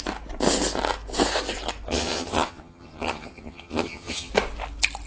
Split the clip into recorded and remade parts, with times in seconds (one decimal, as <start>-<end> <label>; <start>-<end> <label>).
0.0-1.9 recorded; 1.9-4.3 remade; 4.3-5.1 recorded